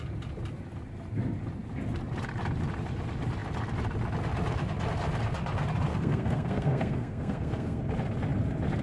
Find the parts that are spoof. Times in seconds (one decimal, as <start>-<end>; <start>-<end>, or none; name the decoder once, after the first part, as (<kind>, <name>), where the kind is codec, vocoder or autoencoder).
5.9-7.8 (codec, SNAC)